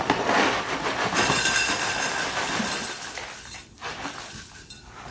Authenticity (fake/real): fake